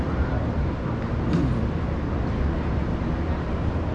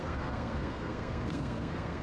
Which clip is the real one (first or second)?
first